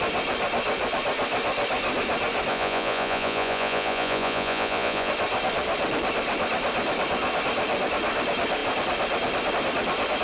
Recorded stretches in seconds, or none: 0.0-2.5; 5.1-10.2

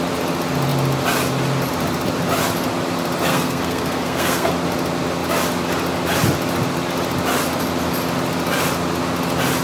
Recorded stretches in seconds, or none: 0.0-3.3; 4.5-9.6